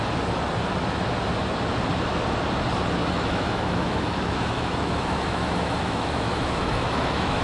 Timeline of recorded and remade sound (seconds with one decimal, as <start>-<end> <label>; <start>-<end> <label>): 0.0-3.0 recorded; 3.0-7.4 remade